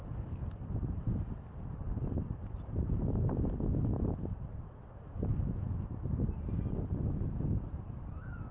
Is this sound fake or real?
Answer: real